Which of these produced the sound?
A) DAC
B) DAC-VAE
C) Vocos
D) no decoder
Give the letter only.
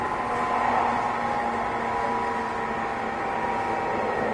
D